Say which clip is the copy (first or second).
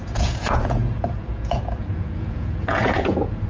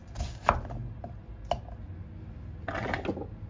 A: first